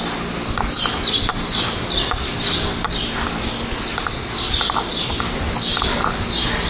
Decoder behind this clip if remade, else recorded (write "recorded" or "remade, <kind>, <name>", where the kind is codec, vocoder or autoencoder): recorded